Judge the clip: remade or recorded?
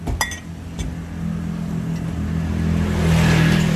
recorded